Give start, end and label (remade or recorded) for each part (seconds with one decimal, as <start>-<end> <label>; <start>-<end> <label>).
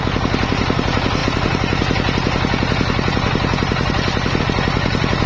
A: 0.0-5.3 recorded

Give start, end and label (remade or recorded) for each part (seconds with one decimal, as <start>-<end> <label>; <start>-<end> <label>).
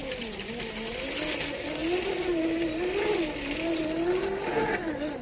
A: 0.0-5.2 recorded